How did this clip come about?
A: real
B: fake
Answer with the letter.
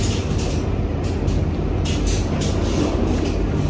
A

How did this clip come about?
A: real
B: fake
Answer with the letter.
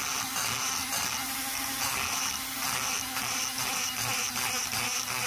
A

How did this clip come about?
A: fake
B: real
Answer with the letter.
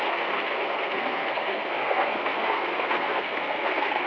A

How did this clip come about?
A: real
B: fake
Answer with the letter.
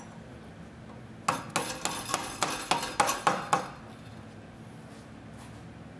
A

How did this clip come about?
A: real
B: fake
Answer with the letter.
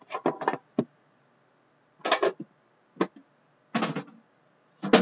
A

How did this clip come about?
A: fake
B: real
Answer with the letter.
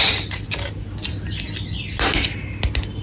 B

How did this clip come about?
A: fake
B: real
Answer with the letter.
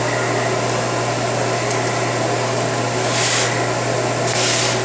B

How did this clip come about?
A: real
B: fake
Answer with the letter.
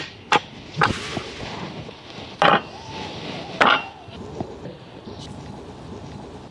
A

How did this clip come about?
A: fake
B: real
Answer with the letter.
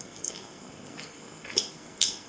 A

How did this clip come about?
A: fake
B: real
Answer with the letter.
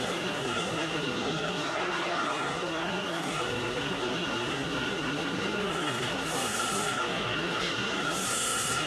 A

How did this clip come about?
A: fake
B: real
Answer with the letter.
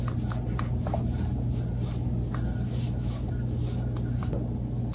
B